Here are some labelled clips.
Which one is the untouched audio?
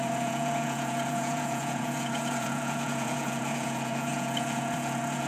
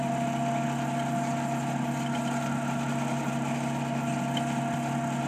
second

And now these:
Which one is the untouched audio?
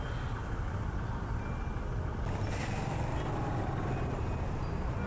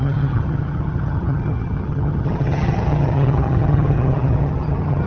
first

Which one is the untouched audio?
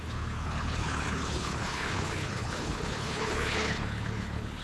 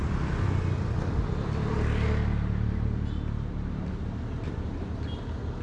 second